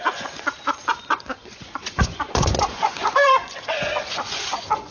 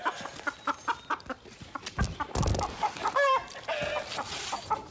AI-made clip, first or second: first